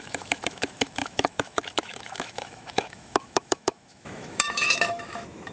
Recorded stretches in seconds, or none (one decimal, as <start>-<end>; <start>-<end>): none